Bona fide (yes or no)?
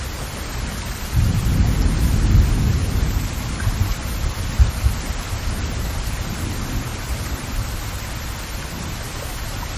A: yes